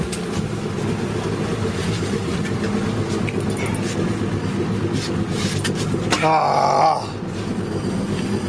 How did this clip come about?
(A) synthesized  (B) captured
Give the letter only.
B